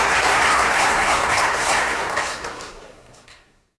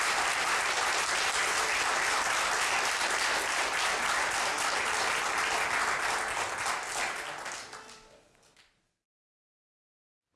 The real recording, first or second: second